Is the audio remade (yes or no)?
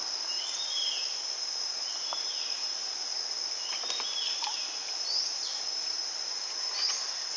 no